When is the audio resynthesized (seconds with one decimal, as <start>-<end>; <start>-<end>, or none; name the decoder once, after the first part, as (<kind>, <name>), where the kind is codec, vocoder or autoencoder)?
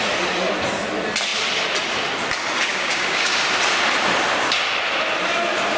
2.7-3.4 (codec, DAC)